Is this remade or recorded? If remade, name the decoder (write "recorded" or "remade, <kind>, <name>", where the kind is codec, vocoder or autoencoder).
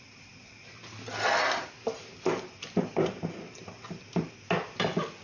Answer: recorded